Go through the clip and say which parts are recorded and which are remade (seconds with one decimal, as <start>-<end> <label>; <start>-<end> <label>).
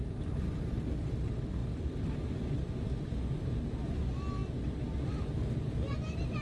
0.0-6.4 recorded